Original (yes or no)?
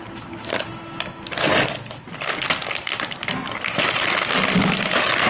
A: yes